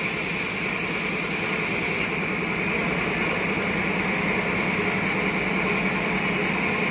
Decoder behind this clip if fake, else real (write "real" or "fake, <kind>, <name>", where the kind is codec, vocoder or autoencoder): real